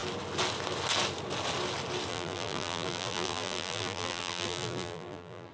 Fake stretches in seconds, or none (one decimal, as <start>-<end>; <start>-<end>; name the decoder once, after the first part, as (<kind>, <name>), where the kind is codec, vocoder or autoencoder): 2.1-5.5 (vocoder, BigVGAN v2)